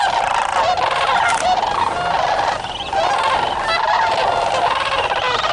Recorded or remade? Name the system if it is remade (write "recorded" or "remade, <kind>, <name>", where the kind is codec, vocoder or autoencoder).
recorded